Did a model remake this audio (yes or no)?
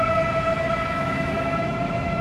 yes